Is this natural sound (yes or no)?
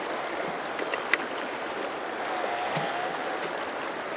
yes